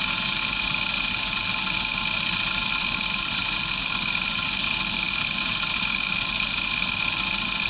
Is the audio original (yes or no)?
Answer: yes